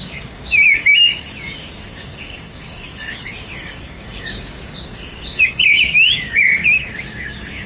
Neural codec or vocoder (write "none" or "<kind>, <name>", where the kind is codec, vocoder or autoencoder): codec, DAC